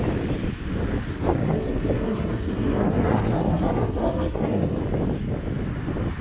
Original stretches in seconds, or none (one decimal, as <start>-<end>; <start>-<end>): 0.0-1.1; 4.8-6.2